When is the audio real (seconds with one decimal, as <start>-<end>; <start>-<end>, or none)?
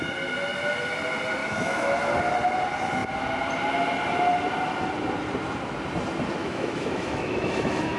0.0-1.4; 2.1-6.4